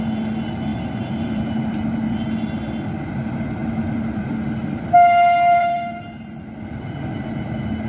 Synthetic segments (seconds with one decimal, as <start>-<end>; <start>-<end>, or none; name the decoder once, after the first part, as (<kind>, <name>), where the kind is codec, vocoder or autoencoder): 0.7-1.8 (vocoder, BigVGAN v2); 3.6-4.3